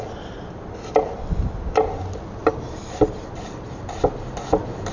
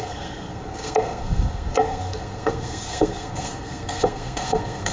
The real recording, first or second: first